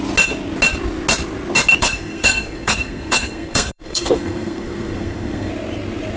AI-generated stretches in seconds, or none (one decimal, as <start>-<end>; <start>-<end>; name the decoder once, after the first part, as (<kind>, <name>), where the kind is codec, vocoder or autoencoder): 1.8-5.5 (codec, SNAC)